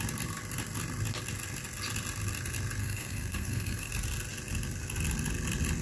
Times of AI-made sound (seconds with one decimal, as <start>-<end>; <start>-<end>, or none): 2.8-3.9